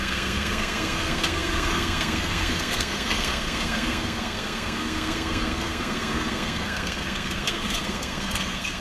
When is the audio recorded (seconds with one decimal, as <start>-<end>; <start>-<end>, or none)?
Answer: none